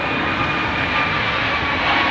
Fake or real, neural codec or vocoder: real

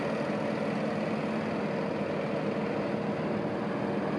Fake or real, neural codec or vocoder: real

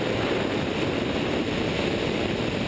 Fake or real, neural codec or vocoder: real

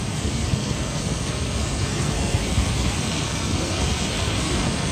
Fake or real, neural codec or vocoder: fake, codec, SNAC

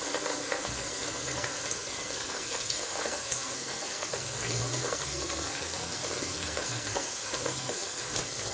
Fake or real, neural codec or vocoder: fake, codec, SNAC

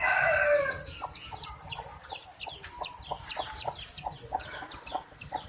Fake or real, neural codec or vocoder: real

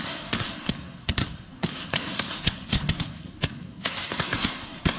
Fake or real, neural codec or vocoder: fake, codec, SNAC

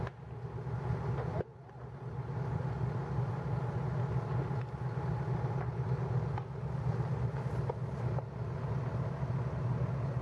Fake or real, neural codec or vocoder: real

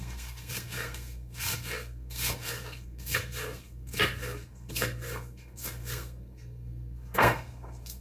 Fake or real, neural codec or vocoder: fake, codec, SNAC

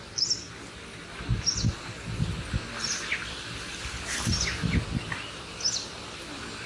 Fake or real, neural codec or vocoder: real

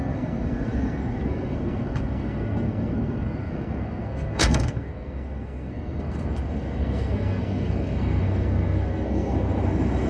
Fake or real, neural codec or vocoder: fake, codec, SNAC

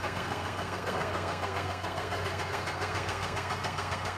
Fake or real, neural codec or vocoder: fake, codec, SNAC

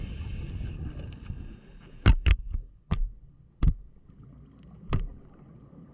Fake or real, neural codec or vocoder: real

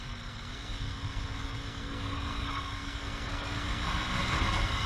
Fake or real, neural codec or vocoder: fake, codec, SNAC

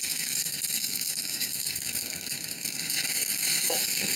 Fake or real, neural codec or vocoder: fake, codec, SNAC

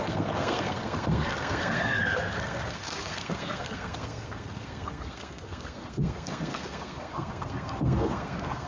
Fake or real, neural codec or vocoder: fake, codec, SNAC